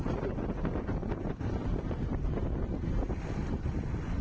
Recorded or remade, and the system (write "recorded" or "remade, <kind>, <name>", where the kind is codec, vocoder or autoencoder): recorded